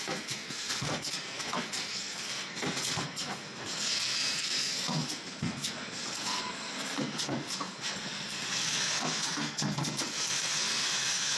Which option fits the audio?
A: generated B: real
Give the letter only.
A